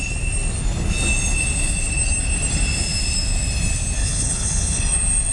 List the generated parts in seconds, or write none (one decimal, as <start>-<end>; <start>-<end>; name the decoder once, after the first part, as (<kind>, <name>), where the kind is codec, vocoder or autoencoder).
4.0-4.8 (codec, HILCodec)